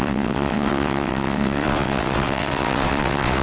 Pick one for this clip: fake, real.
fake